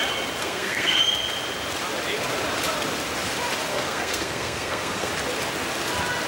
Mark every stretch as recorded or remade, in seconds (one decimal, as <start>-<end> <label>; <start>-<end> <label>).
0.0-0.4 recorded; 0.4-1.0 remade; 1.0-3.7 recorded; 3.7-5.1 remade; 5.1-6.3 recorded